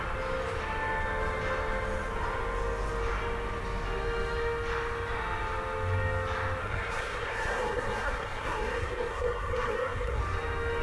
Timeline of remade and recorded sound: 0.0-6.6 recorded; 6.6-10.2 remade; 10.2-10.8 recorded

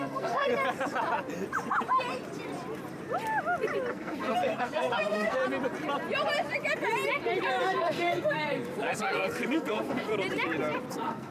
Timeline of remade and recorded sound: 0.0-0.5 remade; 0.5-3.9 recorded; 3.9-5.4 remade; 5.4-7.6 recorded; 7.6-10.1 remade; 10.1-10.9 recorded; 10.9-11.3 remade

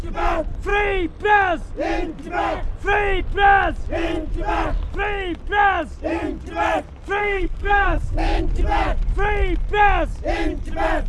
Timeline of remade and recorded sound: 0.0-7.2 recorded; 7.2-8.4 remade; 8.4-11.1 recorded

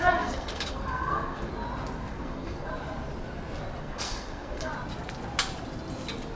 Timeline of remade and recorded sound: 0.0-1.5 remade; 1.5-2.1 recorded; 2.1-2.7 remade; 2.7-3.8 recorded; 3.8-4.7 remade; 4.7-6.4 recorded